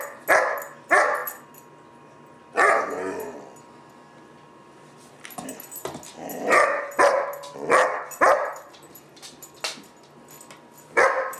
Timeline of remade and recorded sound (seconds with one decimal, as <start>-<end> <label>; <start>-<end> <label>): 0.0-8.3 recorded; 8.3-9.1 remade; 9.1-11.4 recorded